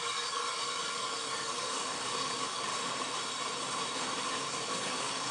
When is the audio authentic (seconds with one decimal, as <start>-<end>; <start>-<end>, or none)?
2.7-4.2